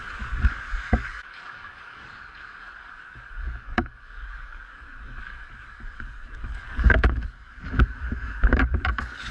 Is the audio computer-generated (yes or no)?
yes